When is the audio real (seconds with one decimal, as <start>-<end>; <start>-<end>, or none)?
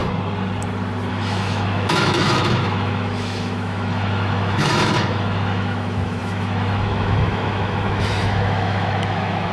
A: 0.0-1.1